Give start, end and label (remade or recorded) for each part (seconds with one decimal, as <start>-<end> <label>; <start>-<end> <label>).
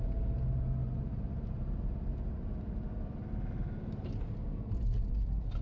0.0-0.8 recorded; 0.8-1.8 remade; 1.8-5.6 recorded